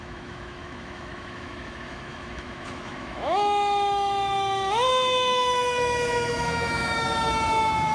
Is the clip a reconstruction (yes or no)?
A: yes